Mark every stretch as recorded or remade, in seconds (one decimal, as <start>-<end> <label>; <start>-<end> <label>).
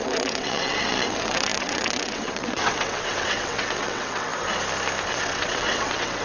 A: 0.0-4.3 remade; 4.3-5.1 recorded; 5.1-6.2 remade